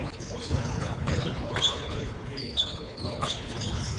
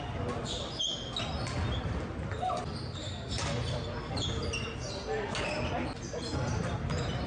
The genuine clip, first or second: second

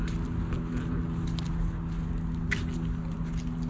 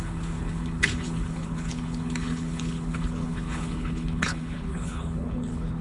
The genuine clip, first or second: first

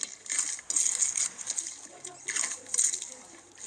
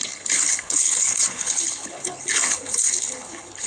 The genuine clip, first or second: first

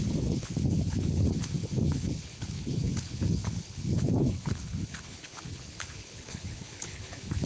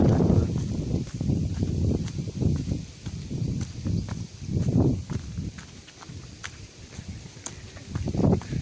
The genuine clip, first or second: second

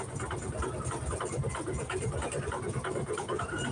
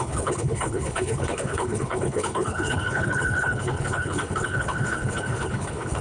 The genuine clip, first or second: first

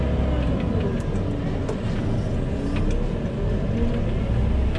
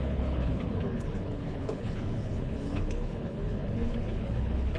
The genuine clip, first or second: first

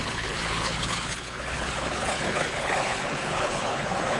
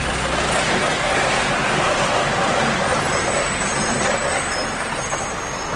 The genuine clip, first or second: second